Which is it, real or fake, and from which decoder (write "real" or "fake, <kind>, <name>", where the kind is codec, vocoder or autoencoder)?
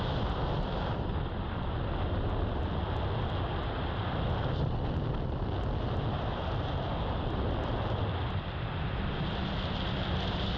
real